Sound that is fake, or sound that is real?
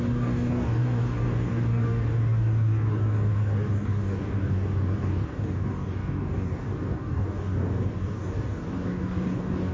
fake